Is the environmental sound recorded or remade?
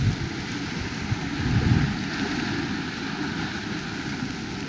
recorded